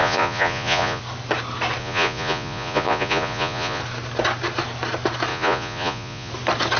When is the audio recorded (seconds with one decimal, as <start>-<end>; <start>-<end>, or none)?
1.0-1.8; 3.8-5.3; 6.3-6.8